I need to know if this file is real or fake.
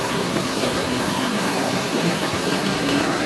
fake